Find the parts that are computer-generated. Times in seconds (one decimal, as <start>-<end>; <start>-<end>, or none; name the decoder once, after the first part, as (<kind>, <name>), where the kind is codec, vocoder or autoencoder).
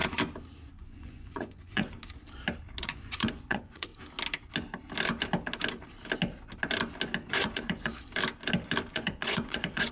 0.7-2.0 (vocoder, Vocos); 2.8-3.9; 7.3-7.9; 8.9-9.9